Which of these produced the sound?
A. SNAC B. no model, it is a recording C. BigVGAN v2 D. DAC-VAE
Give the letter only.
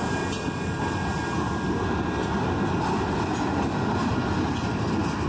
B